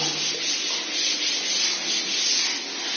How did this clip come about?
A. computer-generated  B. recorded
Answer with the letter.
B